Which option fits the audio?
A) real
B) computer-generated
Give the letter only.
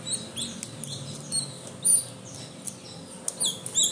A